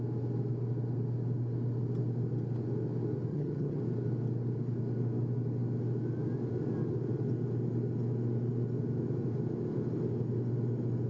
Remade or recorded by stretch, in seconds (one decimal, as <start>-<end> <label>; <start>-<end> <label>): 0.0-3.3 recorded; 3.3-3.8 remade; 3.8-11.1 recorded